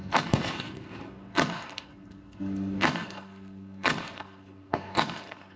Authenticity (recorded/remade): remade